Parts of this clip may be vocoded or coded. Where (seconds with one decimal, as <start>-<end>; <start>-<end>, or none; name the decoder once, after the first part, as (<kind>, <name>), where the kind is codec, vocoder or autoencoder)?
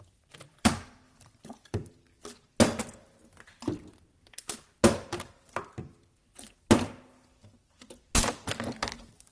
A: 0.5-1.9 (vocoder, BigVGAN v2)